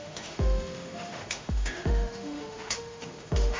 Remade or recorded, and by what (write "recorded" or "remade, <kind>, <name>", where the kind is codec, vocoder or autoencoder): remade, autoencoder, DAC-VAE